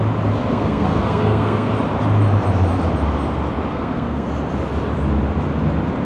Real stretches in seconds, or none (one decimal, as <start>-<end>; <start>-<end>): 0.0-0.5; 1.7-3.7; 4.3-6.0